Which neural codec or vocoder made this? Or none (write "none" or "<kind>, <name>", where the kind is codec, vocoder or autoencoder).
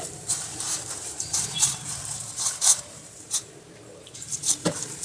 vocoder, BigVGAN v2